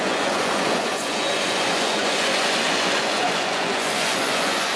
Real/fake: fake